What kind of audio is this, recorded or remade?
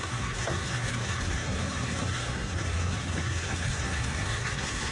remade